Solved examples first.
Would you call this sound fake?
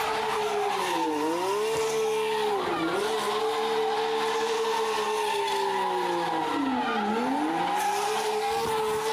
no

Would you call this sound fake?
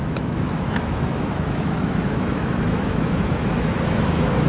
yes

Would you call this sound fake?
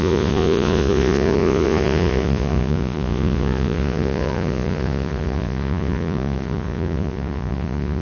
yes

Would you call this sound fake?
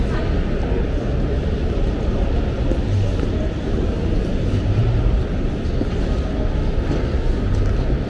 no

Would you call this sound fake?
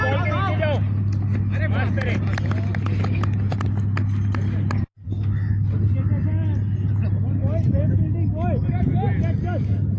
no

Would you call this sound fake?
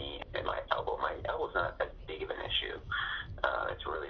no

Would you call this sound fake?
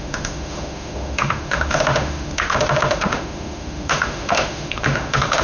yes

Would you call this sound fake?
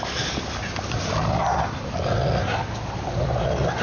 no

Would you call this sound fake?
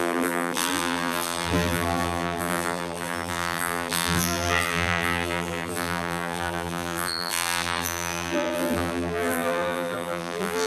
yes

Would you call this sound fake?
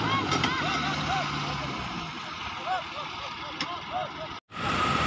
no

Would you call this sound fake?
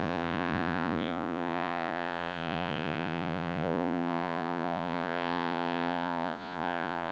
yes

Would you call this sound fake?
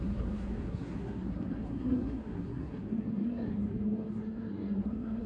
yes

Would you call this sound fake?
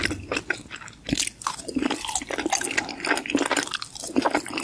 no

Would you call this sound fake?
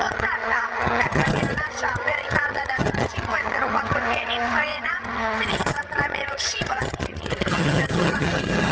yes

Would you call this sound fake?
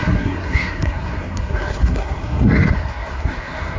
yes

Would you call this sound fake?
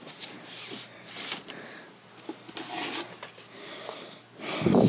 yes